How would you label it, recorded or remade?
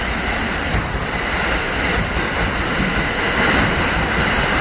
recorded